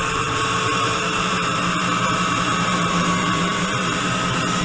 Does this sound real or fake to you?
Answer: fake